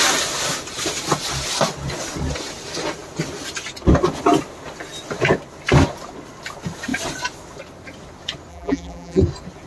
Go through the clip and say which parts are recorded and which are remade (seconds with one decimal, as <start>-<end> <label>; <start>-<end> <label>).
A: 0.0-8.5 recorded; 8.5-9.2 remade; 9.2-9.7 recorded